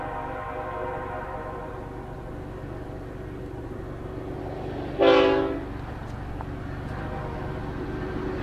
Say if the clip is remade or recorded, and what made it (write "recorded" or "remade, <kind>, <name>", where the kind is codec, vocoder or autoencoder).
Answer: recorded